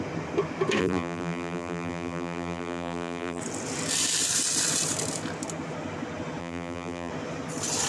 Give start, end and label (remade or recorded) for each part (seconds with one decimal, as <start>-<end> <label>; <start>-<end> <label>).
0.0-0.8 recorded; 0.8-3.4 remade; 3.4-6.4 recorded; 6.4-7.1 remade; 7.1-7.9 recorded